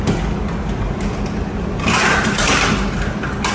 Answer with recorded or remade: recorded